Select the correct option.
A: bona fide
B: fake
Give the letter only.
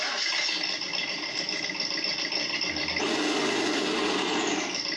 A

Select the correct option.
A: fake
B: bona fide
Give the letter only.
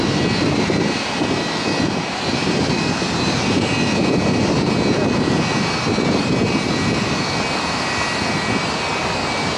B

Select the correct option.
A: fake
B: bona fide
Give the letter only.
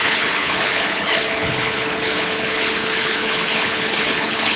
A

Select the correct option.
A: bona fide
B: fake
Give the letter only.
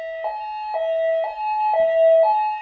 A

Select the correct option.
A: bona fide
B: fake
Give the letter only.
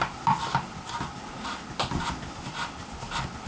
A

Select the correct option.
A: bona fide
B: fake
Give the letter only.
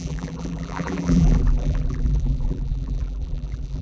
B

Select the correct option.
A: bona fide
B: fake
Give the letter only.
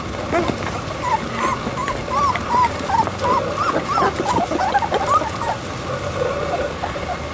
A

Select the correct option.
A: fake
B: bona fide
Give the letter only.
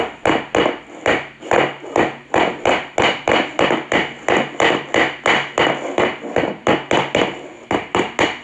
B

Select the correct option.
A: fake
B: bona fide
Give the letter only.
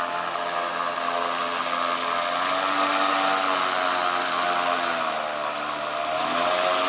B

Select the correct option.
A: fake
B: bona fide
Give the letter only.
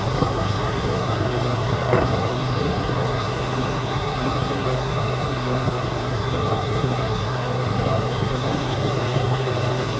A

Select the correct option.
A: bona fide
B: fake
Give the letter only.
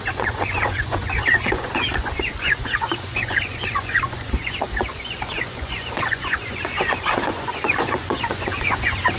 B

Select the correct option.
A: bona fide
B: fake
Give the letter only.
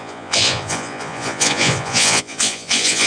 B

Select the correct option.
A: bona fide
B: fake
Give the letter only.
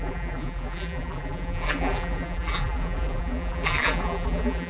B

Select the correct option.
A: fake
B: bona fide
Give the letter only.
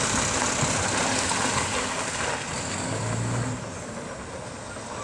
B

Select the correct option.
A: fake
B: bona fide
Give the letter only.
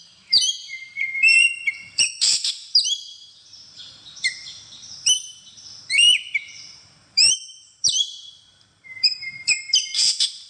A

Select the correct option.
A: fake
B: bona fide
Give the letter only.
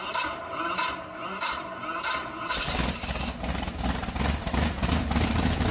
B